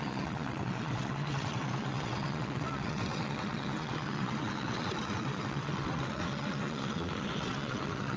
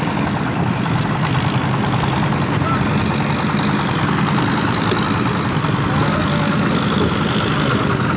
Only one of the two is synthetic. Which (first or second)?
first